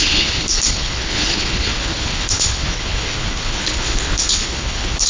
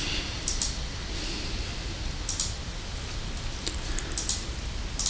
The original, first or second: second